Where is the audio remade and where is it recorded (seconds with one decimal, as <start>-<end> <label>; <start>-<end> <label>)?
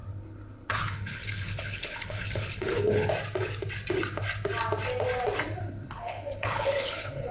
0.0-3.1 remade; 3.1-5.6 recorded; 5.6-7.3 remade